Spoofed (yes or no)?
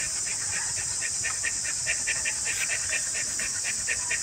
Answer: no